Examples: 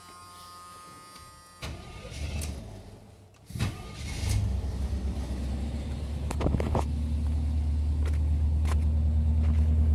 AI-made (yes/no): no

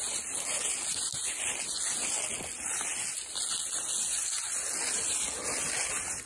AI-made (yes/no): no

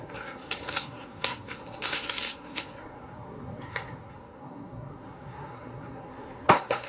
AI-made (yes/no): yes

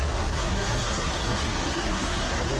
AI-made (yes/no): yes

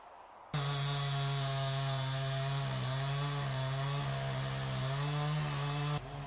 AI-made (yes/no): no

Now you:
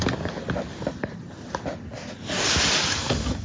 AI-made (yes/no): no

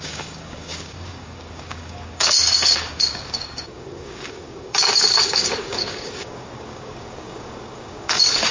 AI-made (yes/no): yes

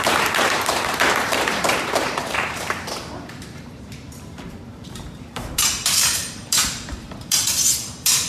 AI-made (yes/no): yes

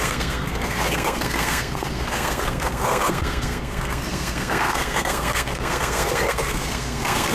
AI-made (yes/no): yes